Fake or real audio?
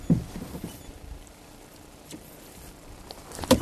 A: real